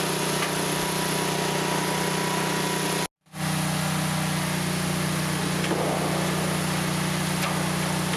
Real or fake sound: real